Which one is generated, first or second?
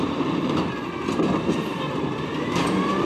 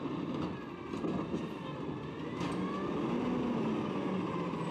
first